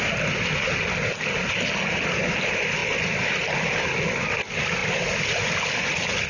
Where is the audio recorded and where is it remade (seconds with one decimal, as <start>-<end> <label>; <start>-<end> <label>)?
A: 0.0-6.3 recorded